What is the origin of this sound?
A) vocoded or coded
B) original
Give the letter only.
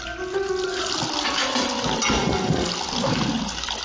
B